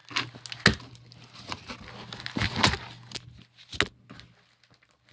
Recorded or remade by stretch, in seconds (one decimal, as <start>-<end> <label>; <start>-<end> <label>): 0.0-5.1 recorded